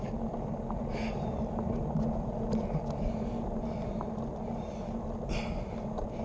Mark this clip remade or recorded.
recorded